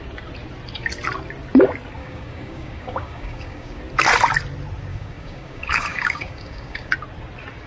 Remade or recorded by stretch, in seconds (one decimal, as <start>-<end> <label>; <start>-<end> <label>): 0.0-2.0 recorded; 2.0-3.8 remade; 3.8-4.9 recorded; 4.9-6.9 remade; 6.9-7.7 recorded